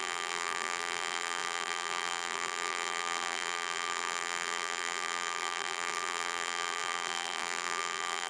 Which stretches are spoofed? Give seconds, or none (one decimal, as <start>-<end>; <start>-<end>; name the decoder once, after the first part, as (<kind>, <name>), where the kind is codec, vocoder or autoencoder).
0.0-8.3 (vocoder, BigVGAN v2)